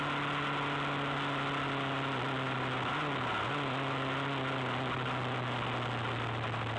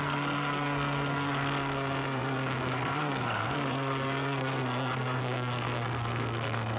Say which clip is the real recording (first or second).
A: first